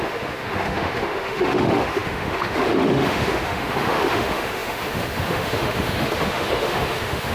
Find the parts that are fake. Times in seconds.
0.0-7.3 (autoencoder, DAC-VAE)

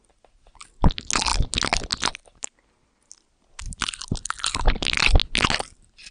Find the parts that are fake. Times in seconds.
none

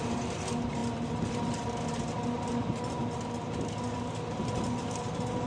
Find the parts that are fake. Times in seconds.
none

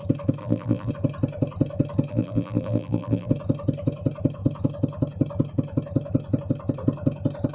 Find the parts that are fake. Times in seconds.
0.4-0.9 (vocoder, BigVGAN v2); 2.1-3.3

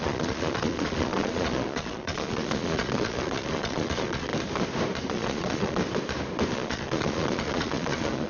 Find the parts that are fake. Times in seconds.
0.0-4.3 (vocoder, Vocos); 5.1-5.8; 6.5-8.3